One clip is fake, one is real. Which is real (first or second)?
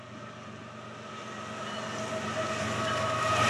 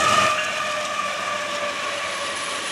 first